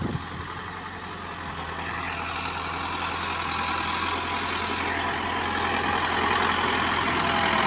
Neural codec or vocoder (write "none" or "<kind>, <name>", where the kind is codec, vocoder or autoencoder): none